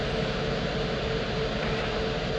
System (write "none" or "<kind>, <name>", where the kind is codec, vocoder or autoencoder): none